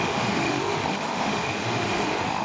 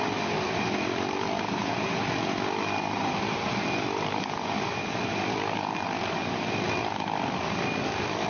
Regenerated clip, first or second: first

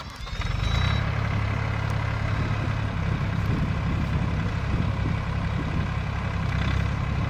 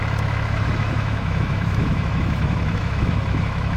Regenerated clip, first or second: second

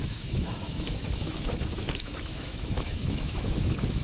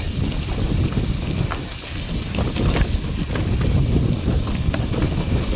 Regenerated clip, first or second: first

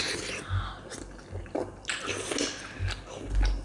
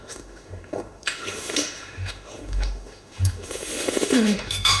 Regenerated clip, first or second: second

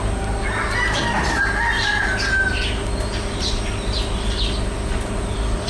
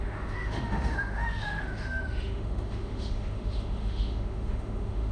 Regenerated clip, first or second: second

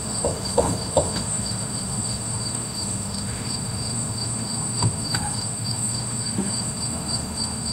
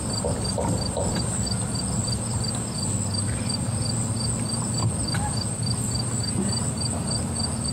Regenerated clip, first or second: first